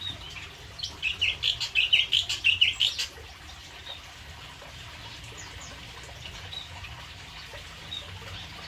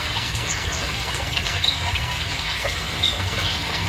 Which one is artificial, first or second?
second